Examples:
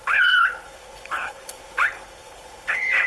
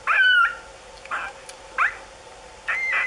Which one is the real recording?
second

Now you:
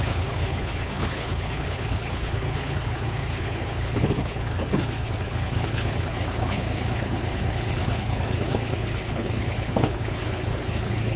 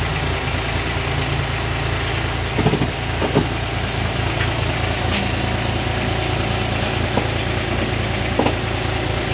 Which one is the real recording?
second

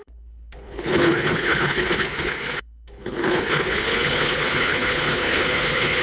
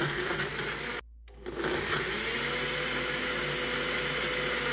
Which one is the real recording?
second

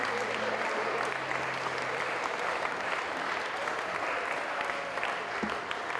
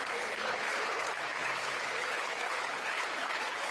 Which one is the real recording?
first